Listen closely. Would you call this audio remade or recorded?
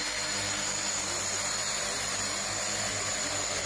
recorded